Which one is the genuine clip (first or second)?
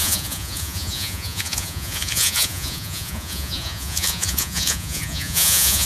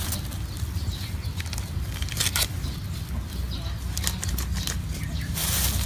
second